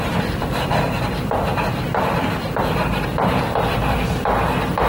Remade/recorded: remade